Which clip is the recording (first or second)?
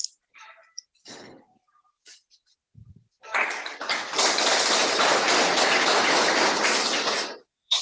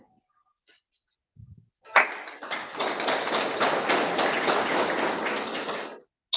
second